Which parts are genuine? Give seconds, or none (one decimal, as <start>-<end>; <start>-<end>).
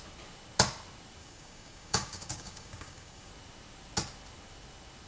0.0-1.2; 3.3-5.1